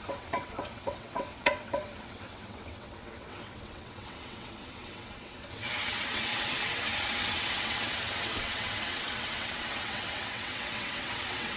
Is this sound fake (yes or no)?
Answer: yes